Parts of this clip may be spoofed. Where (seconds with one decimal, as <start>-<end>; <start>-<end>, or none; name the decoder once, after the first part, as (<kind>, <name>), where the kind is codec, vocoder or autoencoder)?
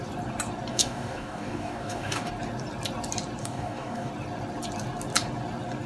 0.7-2.3 (codec, DAC); 3.4-4.1